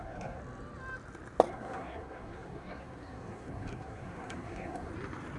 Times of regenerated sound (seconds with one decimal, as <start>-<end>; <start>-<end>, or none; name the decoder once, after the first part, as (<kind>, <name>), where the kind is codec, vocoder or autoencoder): 0.0-0.4 (codec, SNAC); 1.5-4.9

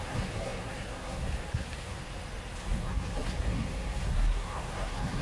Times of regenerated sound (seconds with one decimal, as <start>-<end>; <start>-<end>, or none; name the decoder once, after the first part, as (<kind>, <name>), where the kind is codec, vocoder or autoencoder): 0.0-2.0 (codec, SNAC); 2.6-5.2

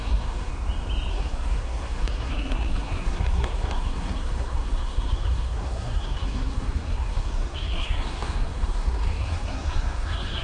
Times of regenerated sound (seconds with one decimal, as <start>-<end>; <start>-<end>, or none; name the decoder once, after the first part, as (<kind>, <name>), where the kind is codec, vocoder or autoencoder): 0.0-0.5 (codec, SNAC); 1.1-10.4